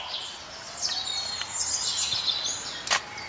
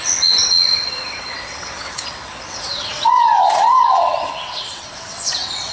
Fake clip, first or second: second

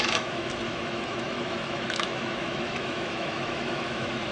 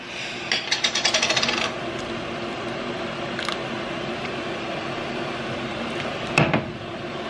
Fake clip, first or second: first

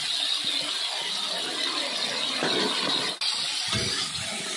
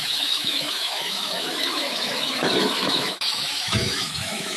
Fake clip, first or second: second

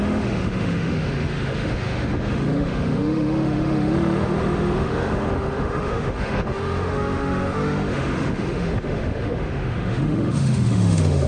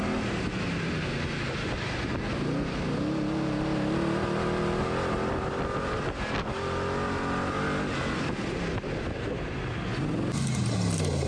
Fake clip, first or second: first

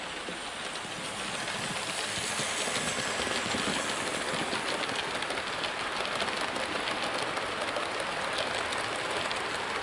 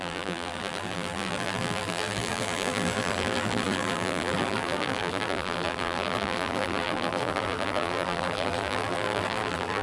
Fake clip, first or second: second